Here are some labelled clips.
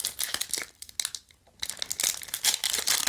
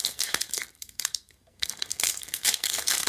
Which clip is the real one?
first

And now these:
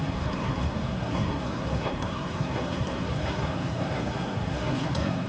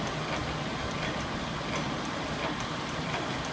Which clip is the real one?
second